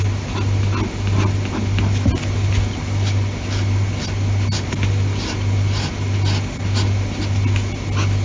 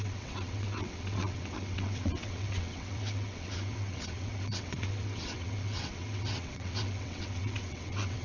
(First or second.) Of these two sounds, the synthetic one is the second